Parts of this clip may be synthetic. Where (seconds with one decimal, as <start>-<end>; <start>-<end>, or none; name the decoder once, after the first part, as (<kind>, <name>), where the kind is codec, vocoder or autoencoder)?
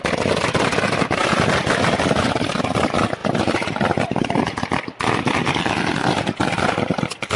1.2-2.5 (vocoder, BigVGAN v2)